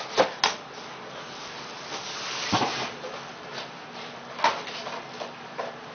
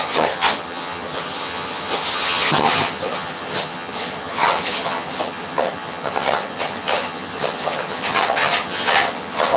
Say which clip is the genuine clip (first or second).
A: first